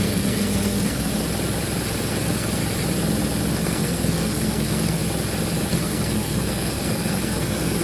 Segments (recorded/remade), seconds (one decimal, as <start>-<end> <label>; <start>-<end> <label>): 0.0-1.1 remade; 1.1-2.1 recorded; 2.1-2.6 remade; 2.6-3.5 recorded; 3.5-5.0 remade; 5.0-5.7 recorded; 5.7-7.8 remade